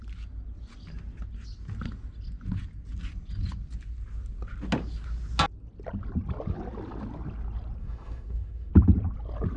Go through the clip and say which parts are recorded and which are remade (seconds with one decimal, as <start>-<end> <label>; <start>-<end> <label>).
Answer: 0.0-7.8 recorded; 7.8-8.7 remade; 8.7-9.6 recorded